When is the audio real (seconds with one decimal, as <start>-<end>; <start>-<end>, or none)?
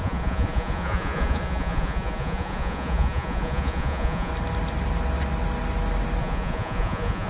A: 4.3-6.2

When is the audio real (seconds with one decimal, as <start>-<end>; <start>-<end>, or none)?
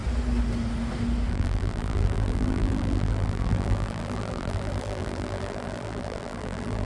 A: 0.0-1.3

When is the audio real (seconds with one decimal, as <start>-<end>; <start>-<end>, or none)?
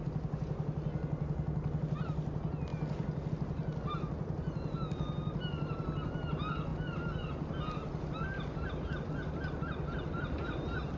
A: 0.0-11.0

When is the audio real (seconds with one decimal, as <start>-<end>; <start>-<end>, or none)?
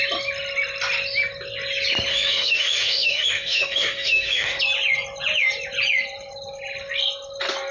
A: 0.0-2.1; 4.6-7.7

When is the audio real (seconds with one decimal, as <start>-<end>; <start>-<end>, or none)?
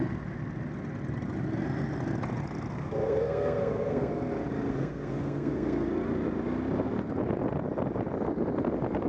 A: 0.0-2.7; 4.2-4.7; 5.9-9.1